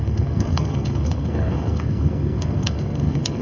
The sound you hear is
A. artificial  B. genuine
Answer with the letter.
A